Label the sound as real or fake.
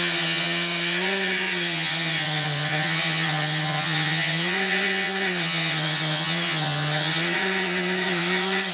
fake